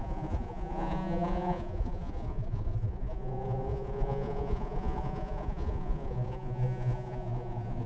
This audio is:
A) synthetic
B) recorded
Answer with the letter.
A